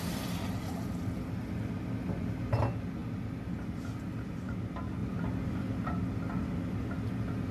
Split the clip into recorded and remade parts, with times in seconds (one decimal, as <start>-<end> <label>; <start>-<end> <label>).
0.0-5.0 recorded; 5.0-5.7 remade; 5.7-7.5 recorded